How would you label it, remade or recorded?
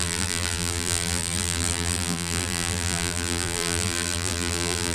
remade